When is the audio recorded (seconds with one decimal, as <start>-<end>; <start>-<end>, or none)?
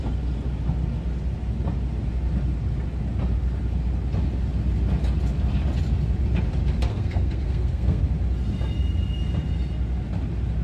0.0-6.9; 8.0-10.6